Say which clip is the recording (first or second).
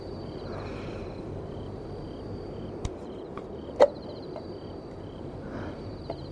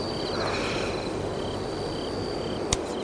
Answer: second